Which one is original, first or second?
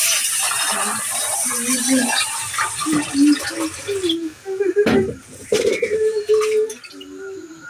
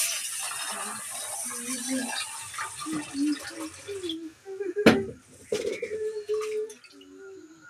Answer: second